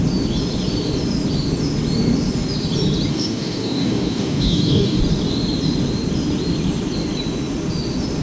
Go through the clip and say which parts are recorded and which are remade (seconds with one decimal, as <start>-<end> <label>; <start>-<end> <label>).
0.0-3.1 recorded; 3.1-5.0 remade; 5.0-8.2 recorded